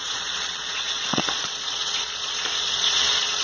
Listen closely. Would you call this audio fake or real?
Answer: fake